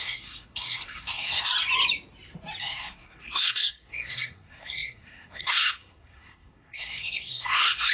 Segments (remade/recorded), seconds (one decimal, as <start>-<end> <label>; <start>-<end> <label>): 0.0-1.5 remade; 1.5-2.6 recorded; 2.6-7.9 remade

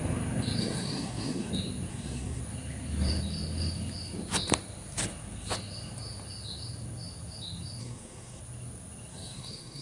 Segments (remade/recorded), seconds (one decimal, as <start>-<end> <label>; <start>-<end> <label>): 0.0-0.6 recorded; 0.6-1.5 remade; 1.5-1.9 recorded; 1.9-2.4 remade; 2.4-7.8 recorded; 7.8-8.4 remade; 8.4-9.1 recorded; 9.1-9.8 remade

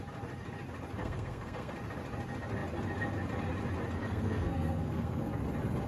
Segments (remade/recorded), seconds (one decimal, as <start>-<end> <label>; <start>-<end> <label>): 0.0-1.0 recorded; 1.0-1.7 remade; 1.7-4.0 recorded; 4.0-5.3 remade; 5.3-5.9 recorded

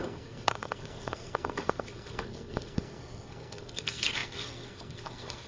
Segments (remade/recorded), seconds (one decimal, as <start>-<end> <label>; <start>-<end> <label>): 0.0-5.5 remade

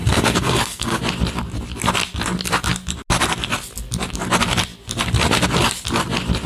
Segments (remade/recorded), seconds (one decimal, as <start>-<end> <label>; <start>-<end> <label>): 0.0-1.0 remade; 1.0-6.5 recorded

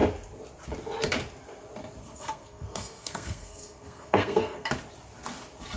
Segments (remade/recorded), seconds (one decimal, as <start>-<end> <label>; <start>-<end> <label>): 0.0-2.0 recorded; 2.0-4.7 remade; 4.7-5.8 recorded